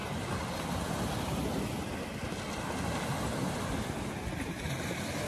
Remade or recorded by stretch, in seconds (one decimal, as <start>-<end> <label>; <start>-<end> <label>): 0.0-5.3 recorded